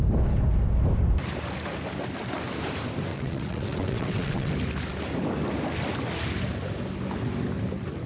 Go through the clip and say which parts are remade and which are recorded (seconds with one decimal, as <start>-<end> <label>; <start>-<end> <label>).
0.0-3.1 recorded; 3.1-4.5 remade; 4.5-8.1 recorded